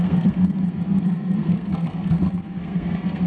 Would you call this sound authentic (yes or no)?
no